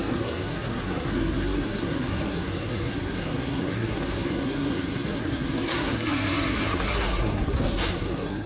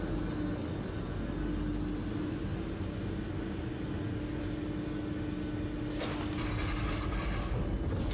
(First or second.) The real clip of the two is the second